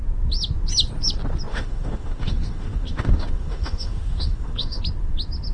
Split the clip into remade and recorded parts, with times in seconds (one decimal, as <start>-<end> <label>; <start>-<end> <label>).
0.0-1.5 recorded; 1.5-4.8 remade; 4.8-5.5 recorded